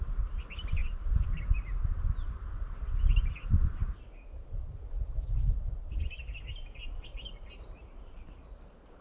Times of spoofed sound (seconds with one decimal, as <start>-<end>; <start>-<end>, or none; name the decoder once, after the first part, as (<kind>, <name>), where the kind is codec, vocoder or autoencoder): 7.1-9.0 (vocoder, BigVGAN v2)